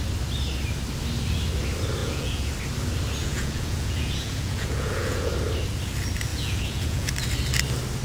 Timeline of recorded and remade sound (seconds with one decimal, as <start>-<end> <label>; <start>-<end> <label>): 0.0-2.0 recorded; 2.0-2.5 remade; 2.5-3.2 recorded; 3.2-5.3 remade; 5.3-6.3 recorded; 6.3-7.1 remade; 7.1-8.0 recorded